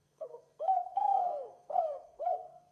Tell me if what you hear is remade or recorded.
remade